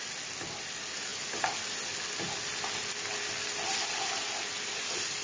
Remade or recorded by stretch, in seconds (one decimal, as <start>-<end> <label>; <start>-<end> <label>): 0.0-5.2 recorded